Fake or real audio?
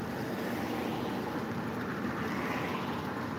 real